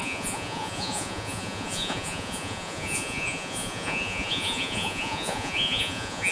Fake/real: fake